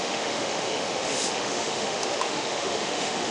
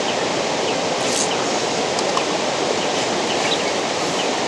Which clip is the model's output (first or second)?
first